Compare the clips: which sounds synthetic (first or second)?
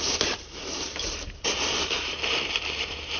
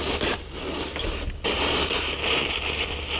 first